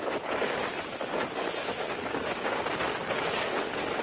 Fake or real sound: real